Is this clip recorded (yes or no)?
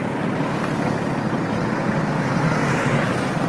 yes